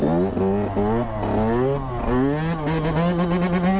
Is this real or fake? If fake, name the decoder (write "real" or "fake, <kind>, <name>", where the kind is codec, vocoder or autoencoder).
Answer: real